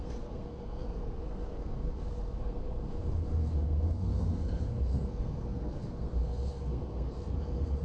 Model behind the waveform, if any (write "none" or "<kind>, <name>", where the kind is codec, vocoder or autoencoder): codec, SNAC